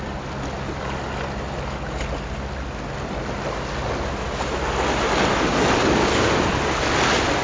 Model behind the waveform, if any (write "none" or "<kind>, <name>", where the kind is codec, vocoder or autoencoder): none